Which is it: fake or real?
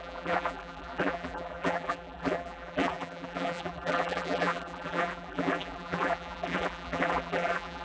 fake